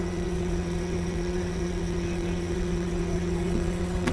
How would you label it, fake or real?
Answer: fake